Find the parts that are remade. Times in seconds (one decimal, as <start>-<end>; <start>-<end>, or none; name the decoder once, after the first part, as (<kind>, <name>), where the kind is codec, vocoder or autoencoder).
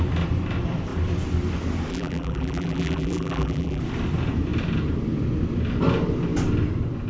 1.9-3.8 (vocoder, BigVGAN v2)